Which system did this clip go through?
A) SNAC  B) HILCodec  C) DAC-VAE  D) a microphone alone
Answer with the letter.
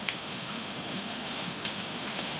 C